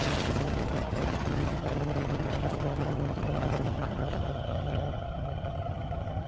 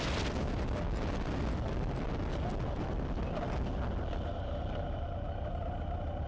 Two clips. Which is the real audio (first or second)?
second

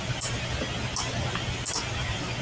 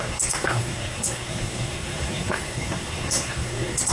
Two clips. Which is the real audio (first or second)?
first